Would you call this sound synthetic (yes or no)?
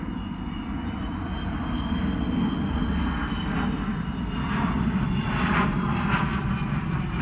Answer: no